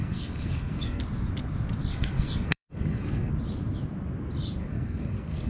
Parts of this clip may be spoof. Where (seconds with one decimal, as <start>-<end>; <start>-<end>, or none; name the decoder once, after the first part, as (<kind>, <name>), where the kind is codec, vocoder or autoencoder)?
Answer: 0.0-1.0 (codec, SNAC); 1.9-3.3; 4.6-5.5